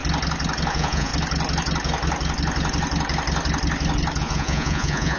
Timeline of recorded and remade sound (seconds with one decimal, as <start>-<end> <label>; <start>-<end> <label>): 0.0-0.7 recorded; 0.7-1.1 remade; 1.1-4.2 recorded; 4.2-5.2 remade